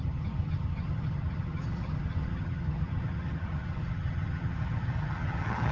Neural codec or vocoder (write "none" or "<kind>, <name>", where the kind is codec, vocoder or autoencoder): vocoder, HiFi-GAN